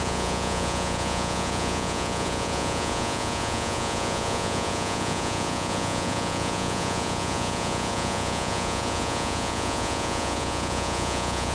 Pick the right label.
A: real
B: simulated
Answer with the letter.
B